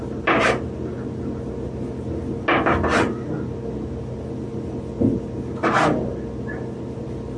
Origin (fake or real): real